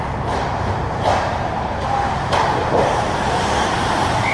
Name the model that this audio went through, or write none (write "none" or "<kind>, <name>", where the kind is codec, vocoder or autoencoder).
vocoder, BigVGAN v2